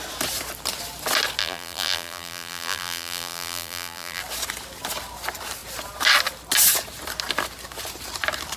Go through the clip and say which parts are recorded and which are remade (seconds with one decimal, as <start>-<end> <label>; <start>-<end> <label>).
0.0-1.4 recorded; 1.4-4.2 remade; 4.2-8.6 recorded

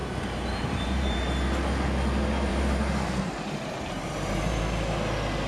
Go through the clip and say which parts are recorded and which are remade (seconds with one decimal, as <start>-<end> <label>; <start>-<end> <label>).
0.0-1.3 remade; 1.3-2.5 recorded; 2.5-4.6 remade; 4.6-5.5 recorded

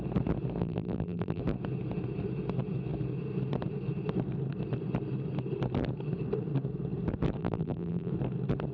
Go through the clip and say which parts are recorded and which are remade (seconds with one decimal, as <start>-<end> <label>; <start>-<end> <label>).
0.0-0.6 recorded; 0.6-1.4 remade; 1.4-7.4 recorded; 7.4-8.1 remade; 8.1-8.7 recorded